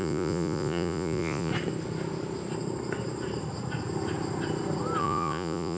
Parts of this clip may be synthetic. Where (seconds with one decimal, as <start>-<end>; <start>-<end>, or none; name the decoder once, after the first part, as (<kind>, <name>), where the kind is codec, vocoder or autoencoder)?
0.0-1.5 (vocoder, Vocos); 5.0-5.8